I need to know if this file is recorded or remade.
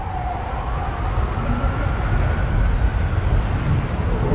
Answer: recorded